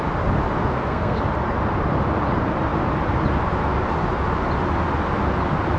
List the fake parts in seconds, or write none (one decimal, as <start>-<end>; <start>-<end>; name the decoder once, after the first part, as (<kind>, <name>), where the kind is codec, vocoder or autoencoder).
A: 0.7-1.2 (codec, SNAC)

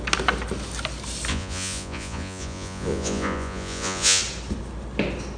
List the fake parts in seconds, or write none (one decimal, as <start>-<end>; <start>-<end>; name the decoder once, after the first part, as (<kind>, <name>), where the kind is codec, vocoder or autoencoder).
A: 1.3-4.2 (vocoder, Vocos)

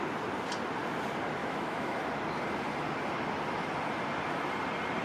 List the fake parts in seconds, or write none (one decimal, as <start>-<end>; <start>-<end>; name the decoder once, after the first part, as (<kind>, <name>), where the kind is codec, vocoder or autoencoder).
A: 1.4-2.0 (autoencoder, DAC-VAE)

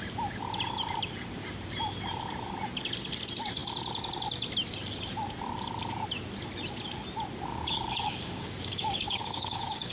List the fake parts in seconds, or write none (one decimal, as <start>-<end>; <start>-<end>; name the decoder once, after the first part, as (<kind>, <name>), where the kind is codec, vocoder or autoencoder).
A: 7.5-9.9 (codec, DAC)

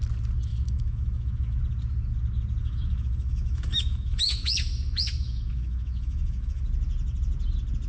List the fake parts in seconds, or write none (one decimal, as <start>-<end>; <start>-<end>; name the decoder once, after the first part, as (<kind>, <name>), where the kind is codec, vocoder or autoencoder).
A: 0.5-1.6 (autoencoder, DAC-VAE); 2.6-6.6

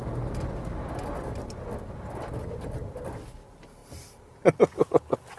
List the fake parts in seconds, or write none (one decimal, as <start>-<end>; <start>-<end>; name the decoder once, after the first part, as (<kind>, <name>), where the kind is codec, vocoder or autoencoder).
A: none

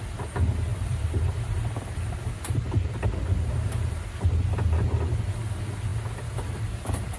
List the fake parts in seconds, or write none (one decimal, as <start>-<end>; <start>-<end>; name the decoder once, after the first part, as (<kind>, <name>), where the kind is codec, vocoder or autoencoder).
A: 0.7-4.2 (vocoder, BigVGAN v2)